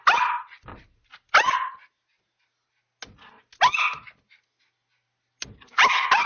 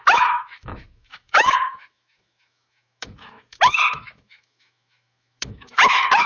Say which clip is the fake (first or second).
second